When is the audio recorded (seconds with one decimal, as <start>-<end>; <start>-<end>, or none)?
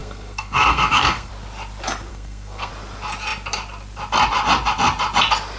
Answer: 1.3-2.1; 2.7-5.6